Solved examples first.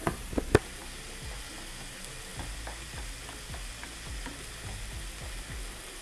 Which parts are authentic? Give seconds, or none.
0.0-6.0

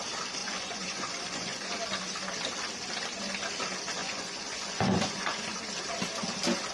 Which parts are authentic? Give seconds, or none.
0.0-0.4; 1.8-4.0; 5.6-6.7

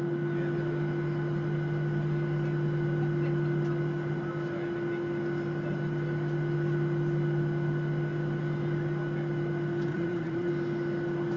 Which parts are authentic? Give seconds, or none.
0.0-9.9; 10.5-11.4

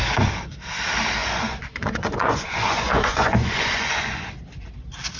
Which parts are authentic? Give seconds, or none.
0.0-1.2; 4.3-5.2

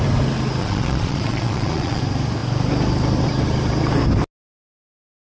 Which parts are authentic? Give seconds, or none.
0.0-0.6; 2.0-5.4

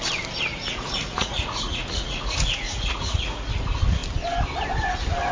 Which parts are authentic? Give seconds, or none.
0.0-0.5; 3.5-5.3

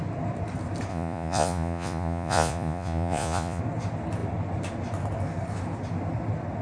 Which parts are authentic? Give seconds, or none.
0.0-0.9; 3.6-6.6

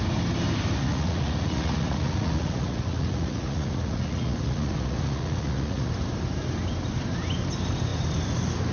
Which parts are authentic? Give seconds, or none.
0.0-0.8; 5.9-8.7